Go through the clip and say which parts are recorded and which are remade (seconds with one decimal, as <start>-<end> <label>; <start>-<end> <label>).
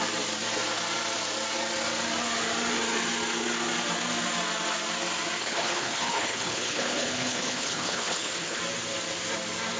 0.0-5.4 recorded; 5.4-8.6 remade; 8.6-9.8 recorded